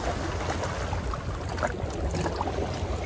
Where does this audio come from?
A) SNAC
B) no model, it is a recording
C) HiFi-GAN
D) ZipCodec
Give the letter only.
B